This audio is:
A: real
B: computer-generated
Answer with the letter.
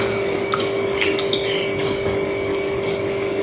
B